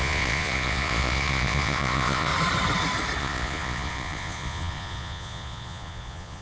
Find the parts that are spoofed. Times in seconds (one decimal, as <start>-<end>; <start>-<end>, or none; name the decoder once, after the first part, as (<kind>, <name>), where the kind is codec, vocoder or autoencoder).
0.0-2.3 (vocoder, Vocos); 3.2-6.4